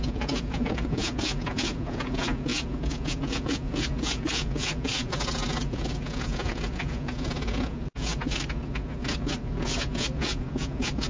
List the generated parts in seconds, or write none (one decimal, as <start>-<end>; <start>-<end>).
0.0-8.1; 9.7-11.1